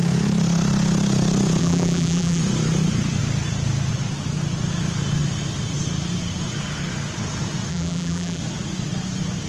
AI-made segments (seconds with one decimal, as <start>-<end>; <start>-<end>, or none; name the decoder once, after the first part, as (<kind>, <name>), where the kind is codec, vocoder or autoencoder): 1.6-2.4 (vocoder, BigVGAN v2); 7.7-8.4